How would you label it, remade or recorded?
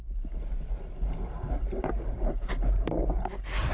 recorded